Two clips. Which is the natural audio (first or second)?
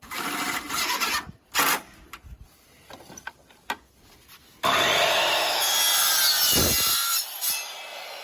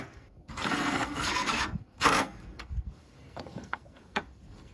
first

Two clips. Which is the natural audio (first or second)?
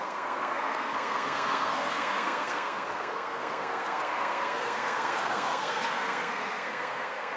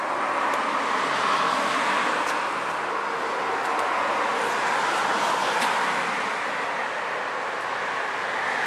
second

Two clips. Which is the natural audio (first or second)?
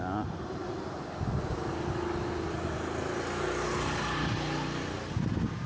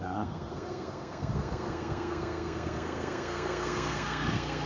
first